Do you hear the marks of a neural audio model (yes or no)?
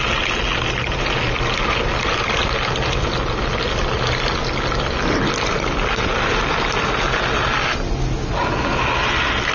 no